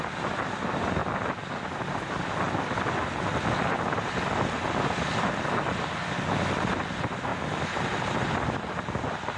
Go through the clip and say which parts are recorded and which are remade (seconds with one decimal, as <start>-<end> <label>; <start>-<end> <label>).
0.0-9.4 recorded